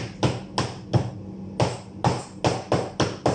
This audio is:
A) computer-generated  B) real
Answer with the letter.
B